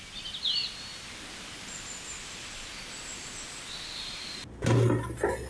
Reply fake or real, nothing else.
real